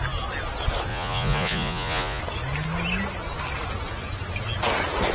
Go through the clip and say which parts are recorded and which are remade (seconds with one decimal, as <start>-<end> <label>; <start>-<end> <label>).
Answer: 0.0-0.9 recorded; 0.9-2.2 remade; 2.2-5.1 recorded